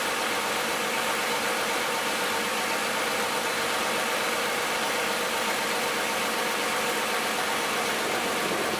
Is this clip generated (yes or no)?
no